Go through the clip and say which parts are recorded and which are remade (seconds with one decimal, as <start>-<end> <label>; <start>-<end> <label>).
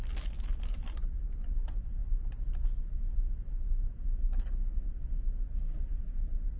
0.0-6.6 recorded